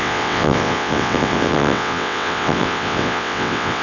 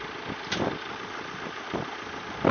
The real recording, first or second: second